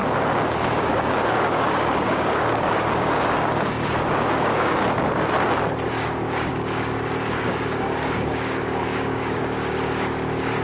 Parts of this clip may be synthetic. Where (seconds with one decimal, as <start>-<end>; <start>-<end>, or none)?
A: 0.8-4.8; 5.9-10.6